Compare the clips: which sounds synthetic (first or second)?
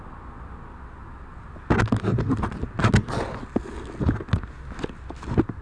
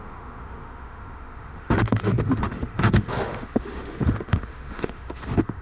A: second